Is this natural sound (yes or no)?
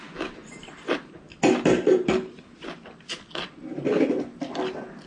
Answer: yes